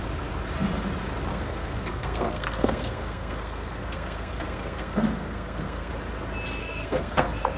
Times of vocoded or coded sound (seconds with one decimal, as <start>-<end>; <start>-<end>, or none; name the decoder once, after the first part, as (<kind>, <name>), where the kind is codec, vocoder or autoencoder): 1.3-5.9 (codec, SNAC); 6.6-7.6